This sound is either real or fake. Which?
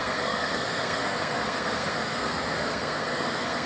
fake